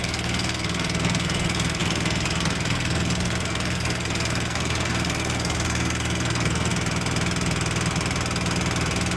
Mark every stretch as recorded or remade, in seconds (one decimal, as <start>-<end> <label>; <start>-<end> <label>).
0.0-6.7 remade; 6.7-9.2 recorded